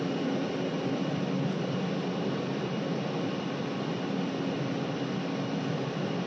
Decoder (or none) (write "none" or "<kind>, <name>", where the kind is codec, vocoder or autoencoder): none